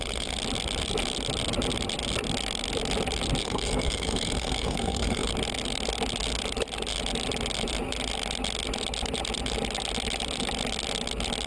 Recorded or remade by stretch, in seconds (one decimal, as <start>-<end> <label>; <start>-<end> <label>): 0.0-3.4 recorded; 3.4-5.3 remade; 5.3-11.5 recorded